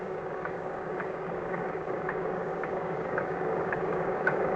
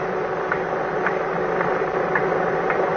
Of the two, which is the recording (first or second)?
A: second